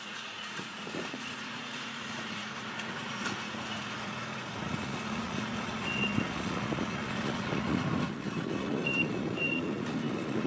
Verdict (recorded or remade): remade